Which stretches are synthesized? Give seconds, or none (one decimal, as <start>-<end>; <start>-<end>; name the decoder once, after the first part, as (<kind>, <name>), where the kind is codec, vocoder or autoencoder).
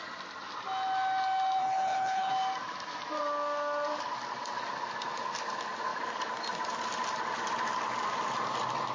1.6-2.3 (codec, HILCodec)